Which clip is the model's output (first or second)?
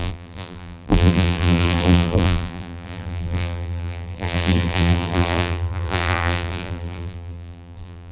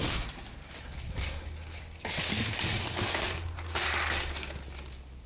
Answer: first